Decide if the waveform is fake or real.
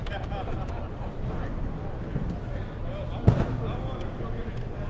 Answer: real